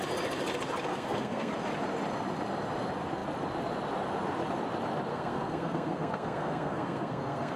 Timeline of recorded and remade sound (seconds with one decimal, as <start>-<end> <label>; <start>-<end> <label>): 0.0-0.9 recorded; 0.9-1.5 remade; 1.5-5.1 recorded; 5.1-7.6 remade